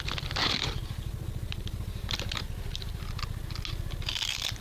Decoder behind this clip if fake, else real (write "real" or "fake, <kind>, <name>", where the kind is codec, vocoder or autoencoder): real